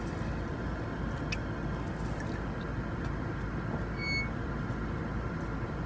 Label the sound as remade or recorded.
recorded